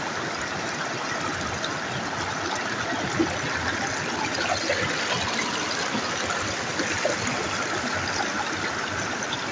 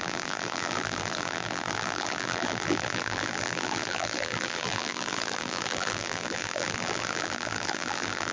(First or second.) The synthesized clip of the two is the second